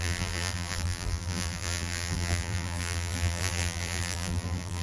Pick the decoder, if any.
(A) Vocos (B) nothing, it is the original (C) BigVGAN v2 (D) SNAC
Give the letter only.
C